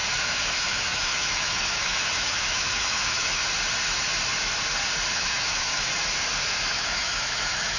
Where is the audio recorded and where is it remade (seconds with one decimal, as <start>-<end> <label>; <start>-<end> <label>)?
0.0-3.4 remade; 3.4-5.1 recorded; 5.1-5.9 remade; 5.9-6.7 recorded; 6.7-7.8 remade